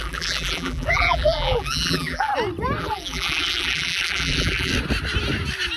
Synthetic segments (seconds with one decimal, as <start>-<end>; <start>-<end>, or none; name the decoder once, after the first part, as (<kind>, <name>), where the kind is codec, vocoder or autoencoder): 0.0-2.3 (vocoder, BigVGAN v2); 2.8-4.7